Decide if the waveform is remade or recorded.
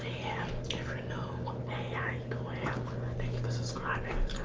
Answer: recorded